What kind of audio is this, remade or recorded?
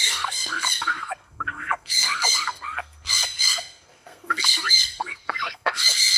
remade